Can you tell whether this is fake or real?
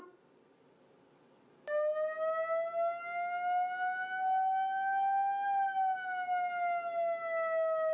real